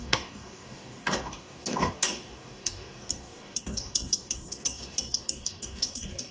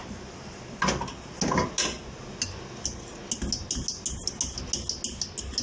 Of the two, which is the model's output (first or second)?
first